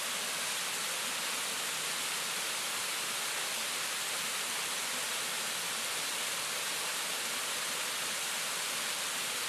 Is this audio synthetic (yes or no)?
no